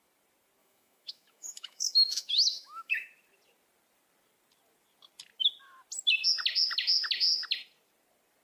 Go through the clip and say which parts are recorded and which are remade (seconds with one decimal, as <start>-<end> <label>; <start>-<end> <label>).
0.0-0.6 recorded; 0.6-3.1 remade; 3.1-8.4 recorded